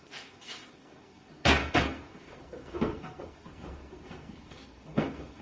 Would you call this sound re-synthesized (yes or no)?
yes